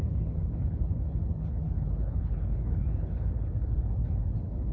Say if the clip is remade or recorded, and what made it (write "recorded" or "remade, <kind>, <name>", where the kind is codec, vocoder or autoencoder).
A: remade, codec, HILCodec